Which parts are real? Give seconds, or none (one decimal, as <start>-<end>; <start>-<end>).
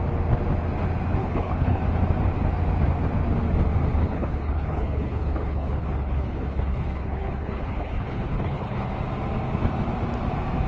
0.0-1.2; 1.8-4.0; 8.9-10.7